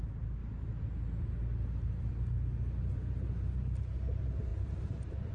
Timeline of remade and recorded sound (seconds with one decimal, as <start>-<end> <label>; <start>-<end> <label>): 0.0-5.3 recorded